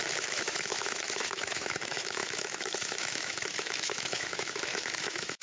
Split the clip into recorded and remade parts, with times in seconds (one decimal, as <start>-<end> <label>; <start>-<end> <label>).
0.0-5.4 remade